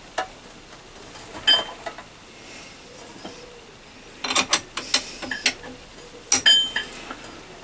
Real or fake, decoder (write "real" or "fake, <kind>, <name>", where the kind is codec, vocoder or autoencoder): real